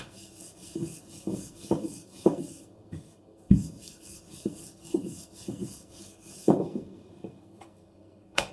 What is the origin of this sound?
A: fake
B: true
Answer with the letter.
A